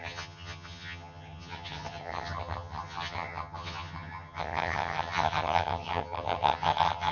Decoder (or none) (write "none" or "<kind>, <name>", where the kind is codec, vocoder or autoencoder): vocoder, HiFi-GAN